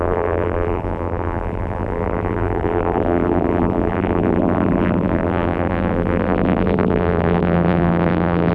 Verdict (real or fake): fake